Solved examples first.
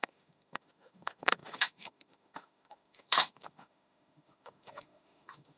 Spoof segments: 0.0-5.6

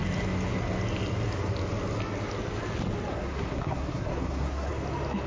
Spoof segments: 3.1-4.7

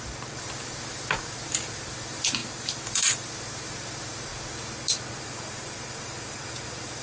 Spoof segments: 0.0-4.3; 5.2-7.0

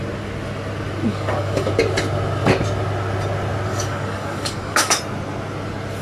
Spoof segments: 1.1-1.7; 3.7-5.0

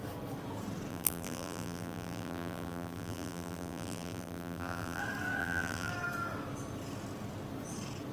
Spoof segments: 0.9-5.0; 5.4-5.9

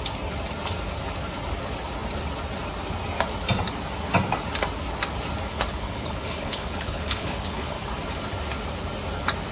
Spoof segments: 5.5-7.9